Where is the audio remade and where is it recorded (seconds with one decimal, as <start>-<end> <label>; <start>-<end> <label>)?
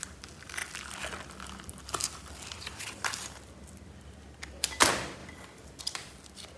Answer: 0.0-0.6 remade; 0.6-4.6 recorded; 4.6-5.2 remade; 5.2-5.8 recorded; 5.8-6.6 remade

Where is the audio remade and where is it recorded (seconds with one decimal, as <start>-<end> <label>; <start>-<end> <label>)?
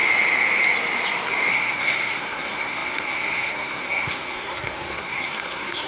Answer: 0.0-1.5 recorded; 1.5-5.9 remade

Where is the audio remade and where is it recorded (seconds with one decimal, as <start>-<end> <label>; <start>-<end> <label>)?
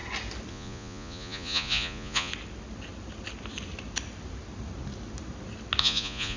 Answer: 0.0-0.5 recorded; 0.5-2.3 remade; 2.3-5.8 recorded; 5.8-6.4 remade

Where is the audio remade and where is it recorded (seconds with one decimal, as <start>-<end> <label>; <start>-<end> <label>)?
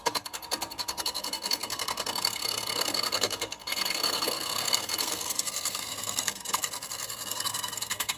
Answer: 0.0-8.2 remade